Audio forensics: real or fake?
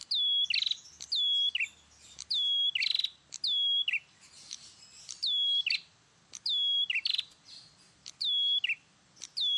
real